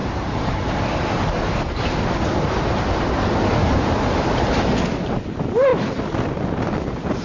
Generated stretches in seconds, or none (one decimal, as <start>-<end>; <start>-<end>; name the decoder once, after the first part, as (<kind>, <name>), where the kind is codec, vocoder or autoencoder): 3.6-4.5 (vocoder, BigVGAN v2)

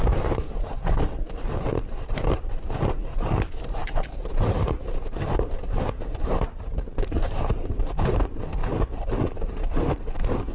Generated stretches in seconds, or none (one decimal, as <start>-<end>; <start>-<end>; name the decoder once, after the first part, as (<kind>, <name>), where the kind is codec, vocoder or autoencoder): 0.0-8.6 (vocoder, BigVGAN v2); 9.5-10.5

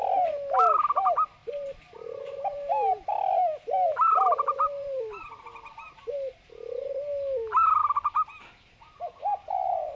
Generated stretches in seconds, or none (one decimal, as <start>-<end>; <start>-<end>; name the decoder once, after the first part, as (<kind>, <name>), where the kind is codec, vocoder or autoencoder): 1.4-5.4 (vocoder, BigVGAN v2)

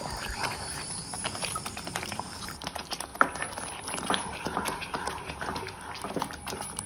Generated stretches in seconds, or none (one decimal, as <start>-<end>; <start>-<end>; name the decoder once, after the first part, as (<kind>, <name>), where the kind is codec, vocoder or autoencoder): 0.0-3.1 (vocoder, BigVGAN v2); 4.0-6.9

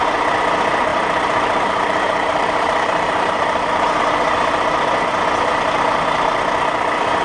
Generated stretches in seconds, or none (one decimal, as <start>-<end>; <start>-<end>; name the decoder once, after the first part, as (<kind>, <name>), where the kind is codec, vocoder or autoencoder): 0.9-4.0 (vocoder, BigVGAN v2)

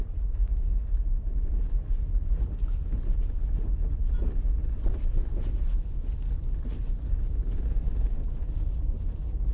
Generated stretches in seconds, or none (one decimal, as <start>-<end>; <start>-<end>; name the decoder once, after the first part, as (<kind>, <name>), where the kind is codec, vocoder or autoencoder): 4.6-5.6 (vocoder, BigVGAN v2)